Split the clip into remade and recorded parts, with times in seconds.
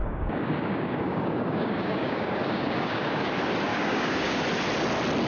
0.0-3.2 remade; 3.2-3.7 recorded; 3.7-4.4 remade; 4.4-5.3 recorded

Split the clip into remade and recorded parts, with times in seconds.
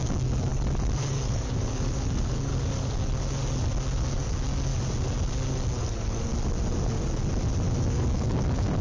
0.0-0.5 remade; 0.5-1.1 recorded; 1.1-2.5 remade; 2.5-4.2 recorded; 4.2-4.7 remade; 4.7-5.8 recorded; 5.8-6.3 remade; 6.3-8.0 recorded; 8.0-8.8 remade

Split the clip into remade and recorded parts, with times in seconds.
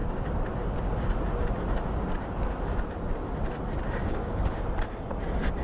0.0-4.0 recorded; 4.0-4.6 remade; 4.6-5.6 recorded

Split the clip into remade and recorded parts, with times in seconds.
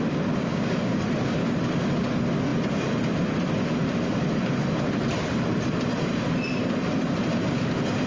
0.0-0.5 recorded; 0.5-1.0 remade; 1.0-8.1 recorded